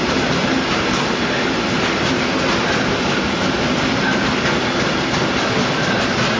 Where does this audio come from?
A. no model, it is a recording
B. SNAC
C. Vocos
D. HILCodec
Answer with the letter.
A